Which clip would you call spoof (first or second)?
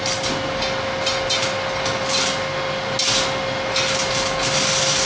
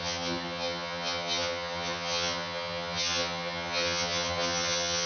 second